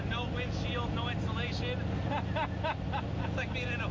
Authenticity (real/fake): real